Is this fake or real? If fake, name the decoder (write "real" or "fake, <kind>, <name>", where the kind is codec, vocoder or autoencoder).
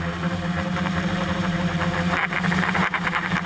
fake, vocoder, BigVGAN v2